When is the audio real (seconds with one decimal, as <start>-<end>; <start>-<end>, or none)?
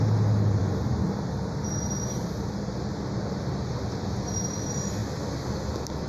0.0-6.1